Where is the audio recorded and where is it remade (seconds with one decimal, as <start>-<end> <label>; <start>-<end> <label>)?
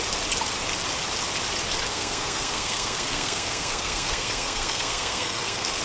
0.0-1.9 recorded; 1.9-5.8 remade